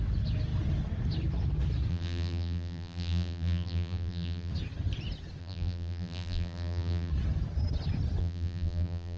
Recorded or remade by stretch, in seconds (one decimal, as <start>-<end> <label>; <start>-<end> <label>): 0.0-1.9 recorded; 1.9-4.5 remade; 4.5-5.4 recorded; 5.4-7.1 remade; 7.1-8.2 recorded; 8.2-9.2 remade